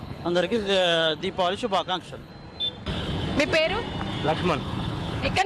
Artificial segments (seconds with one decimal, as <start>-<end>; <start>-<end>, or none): 0.0-1.2; 1.9-2.3; 2.9-3.3; 4.6-5.5